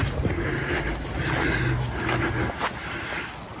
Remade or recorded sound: recorded